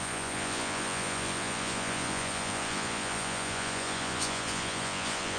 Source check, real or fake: fake